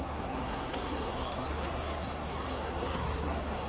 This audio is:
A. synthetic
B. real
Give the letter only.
A